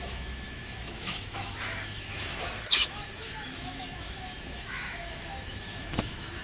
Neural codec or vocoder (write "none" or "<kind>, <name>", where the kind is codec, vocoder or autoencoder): autoencoder, DAC-VAE